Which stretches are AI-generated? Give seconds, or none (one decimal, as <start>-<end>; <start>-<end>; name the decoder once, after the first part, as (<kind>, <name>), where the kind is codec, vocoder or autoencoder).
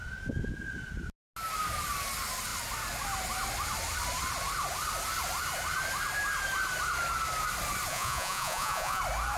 7.9-9.0 (vocoder, Vocos)